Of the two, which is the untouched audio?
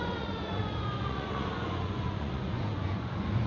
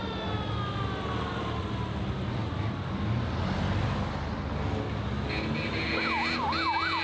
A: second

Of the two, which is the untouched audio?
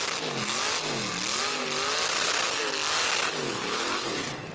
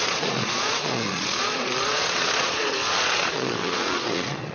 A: first